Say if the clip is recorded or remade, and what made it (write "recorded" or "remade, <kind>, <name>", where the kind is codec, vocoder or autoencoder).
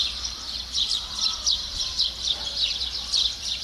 remade, vocoder, BigVGAN v2